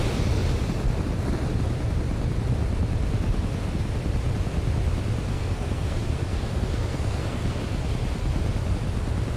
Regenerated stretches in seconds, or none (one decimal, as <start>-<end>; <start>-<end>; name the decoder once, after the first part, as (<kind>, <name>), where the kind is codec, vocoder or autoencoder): 5.3-7.6 (codec, SNAC)